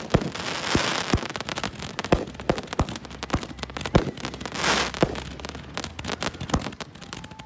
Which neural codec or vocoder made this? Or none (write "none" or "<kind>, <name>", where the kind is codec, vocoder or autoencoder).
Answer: none